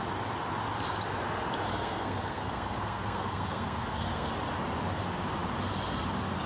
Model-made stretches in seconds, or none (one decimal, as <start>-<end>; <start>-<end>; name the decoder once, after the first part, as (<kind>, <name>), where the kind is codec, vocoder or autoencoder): 1.7-4.3 (codec, SNAC)